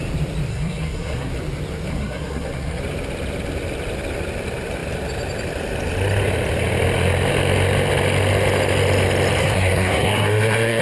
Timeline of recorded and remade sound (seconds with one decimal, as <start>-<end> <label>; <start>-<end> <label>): 0.0-0.5 recorded; 0.5-1.3 remade; 1.3-1.9 recorded; 1.9-2.8 remade; 2.8-9.4 recorded; 9.4-10.8 remade